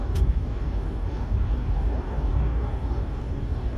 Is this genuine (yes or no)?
no